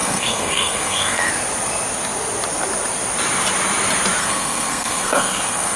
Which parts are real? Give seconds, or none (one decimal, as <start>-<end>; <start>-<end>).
1.3-4.2